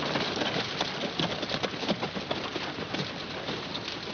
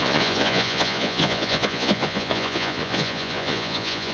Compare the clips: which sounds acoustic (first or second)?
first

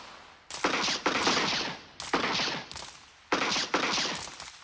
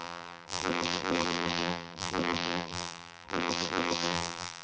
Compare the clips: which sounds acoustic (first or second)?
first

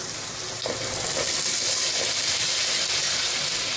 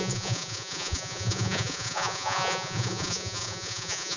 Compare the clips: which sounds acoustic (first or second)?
first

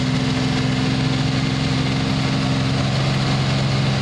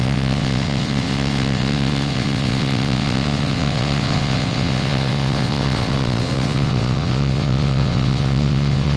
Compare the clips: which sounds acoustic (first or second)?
first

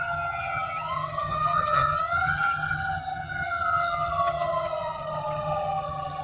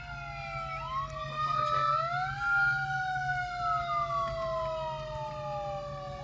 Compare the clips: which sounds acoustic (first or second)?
second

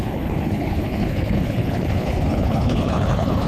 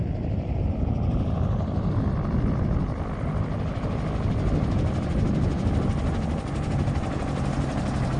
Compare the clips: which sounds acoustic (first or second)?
second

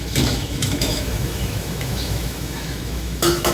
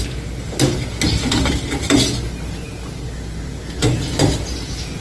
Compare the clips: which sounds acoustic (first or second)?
second